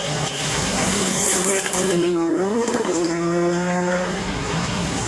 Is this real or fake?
fake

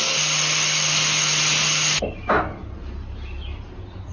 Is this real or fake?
real